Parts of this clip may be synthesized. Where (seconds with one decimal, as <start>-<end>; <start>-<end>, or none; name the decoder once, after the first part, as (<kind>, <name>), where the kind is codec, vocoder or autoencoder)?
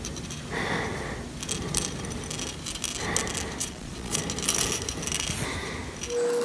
3.6-4.2 (vocoder, Vocos)